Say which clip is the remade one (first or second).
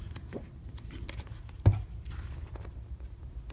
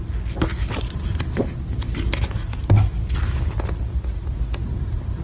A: first